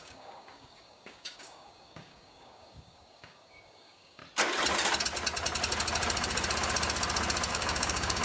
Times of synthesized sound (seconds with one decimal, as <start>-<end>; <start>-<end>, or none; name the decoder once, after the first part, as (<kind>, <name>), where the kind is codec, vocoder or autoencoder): 0.0-4.2 (codec, DAC); 7.5-8.2